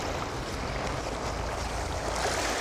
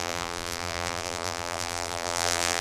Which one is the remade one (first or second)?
second